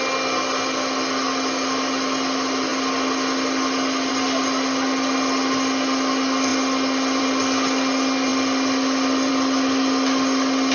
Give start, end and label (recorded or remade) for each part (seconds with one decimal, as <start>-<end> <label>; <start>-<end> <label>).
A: 0.0-10.7 recorded